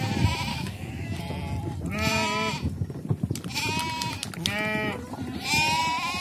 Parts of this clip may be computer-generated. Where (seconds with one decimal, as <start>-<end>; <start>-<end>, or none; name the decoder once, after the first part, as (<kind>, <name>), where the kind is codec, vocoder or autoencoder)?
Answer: 0.5-1.2 (codec, DAC)